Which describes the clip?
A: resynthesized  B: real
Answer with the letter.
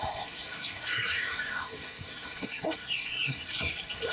A